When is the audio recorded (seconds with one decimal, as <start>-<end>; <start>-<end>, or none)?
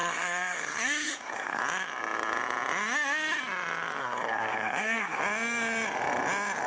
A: 1.6-4.0; 5.2-6.7